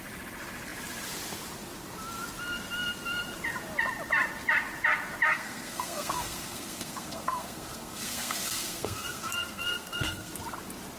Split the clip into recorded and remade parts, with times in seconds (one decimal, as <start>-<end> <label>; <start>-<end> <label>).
0.0-5.3 recorded; 5.3-10.3 remade; 10.3-11.0 recorded